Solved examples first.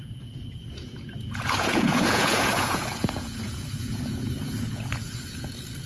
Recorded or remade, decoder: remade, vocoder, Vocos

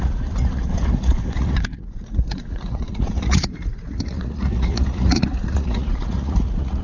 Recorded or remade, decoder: remade, vocoder, Vocos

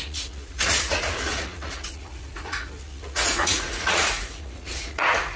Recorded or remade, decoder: remade, vocoder, Vocos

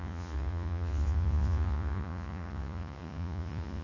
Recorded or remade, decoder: remade, vocoder, Vocos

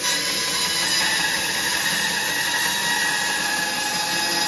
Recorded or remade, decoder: recorded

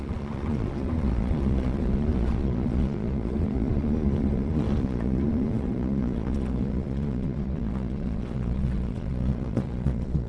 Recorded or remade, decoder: remade, vocoder, Vocos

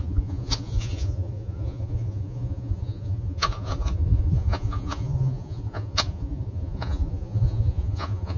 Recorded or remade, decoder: remade, vocoder, Vocos